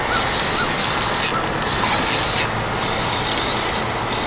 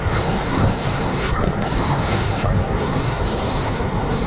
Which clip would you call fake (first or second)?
second